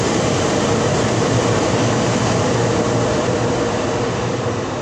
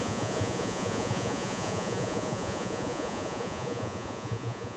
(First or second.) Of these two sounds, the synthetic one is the second